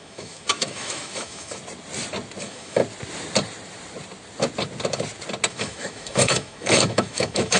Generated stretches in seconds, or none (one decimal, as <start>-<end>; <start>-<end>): 0.0-1.6; 2.4-2.8; 5.5-7.6